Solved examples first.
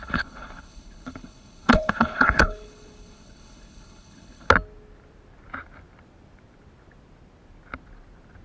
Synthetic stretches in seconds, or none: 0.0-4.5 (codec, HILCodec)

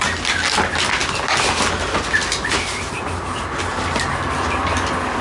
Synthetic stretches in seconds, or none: none

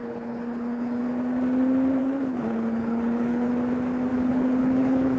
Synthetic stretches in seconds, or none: 0.0-1.0 (codec, HILCodec); 2.0-3.5; 4.1-5.2

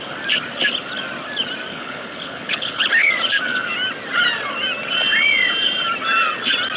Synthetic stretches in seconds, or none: 1.7-3.1 (codec, HILCodec)

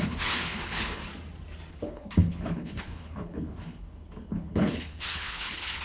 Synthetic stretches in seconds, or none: 0.0-1.1 (codec, HILCodec); 1.7-5.8